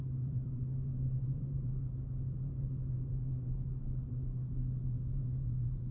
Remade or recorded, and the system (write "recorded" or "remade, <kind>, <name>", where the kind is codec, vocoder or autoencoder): remade, vocoder, BigVGAN v2